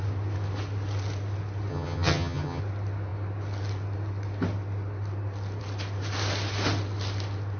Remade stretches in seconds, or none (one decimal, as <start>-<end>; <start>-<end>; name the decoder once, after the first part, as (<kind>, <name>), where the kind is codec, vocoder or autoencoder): 1.7-2.6 (vocoder, HiFi-GAN)